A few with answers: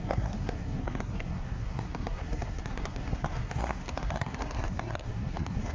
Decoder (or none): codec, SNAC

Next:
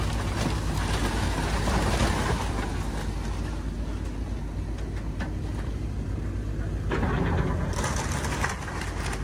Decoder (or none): none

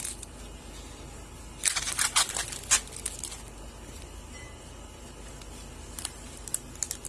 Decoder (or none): none